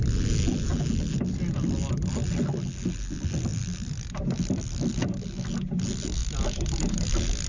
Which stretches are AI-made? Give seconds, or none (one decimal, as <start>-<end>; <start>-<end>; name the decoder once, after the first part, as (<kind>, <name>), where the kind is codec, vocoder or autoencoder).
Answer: 3.5-4.9 (vocoder, BigVGAN v2); 6.2-7.1